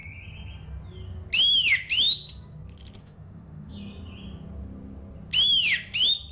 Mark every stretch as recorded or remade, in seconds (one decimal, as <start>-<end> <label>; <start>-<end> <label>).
0.0-3.0 recorded; 3.0-3.7 remade; 3.7-6.3 recorded